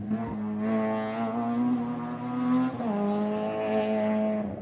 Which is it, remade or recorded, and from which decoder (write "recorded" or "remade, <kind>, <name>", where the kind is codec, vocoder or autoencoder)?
recorded